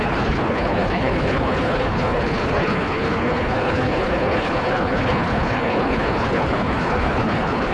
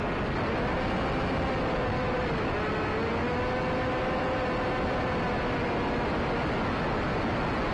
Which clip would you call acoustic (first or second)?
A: second